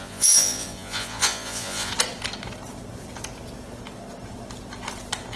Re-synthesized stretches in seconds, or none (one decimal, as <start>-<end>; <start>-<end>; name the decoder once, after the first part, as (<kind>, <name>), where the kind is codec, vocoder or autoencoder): 0.0-1.9 (vocoder, Vocos)